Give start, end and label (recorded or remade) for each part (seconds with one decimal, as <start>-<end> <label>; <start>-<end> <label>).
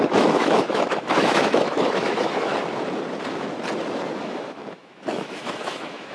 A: 0.0-2.5 remade; 2.5-4.2 recorded; 4.2-6.1 remade